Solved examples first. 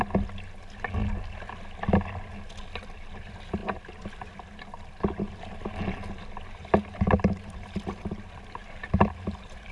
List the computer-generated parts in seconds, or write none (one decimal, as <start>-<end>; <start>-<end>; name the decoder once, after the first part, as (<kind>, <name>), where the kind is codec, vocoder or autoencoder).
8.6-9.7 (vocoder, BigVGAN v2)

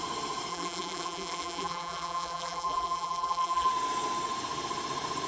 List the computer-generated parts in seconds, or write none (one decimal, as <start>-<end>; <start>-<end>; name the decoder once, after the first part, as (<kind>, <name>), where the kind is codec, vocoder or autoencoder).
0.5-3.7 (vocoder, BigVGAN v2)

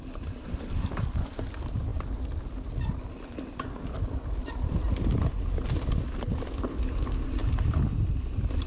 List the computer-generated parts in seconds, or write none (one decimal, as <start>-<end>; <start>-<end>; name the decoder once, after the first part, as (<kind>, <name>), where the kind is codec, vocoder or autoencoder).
none

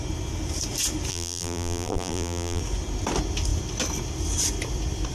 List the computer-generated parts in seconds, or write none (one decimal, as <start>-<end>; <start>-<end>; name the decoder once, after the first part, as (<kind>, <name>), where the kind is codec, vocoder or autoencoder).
1.1-2.6 (vocoder, BigVGAN v2)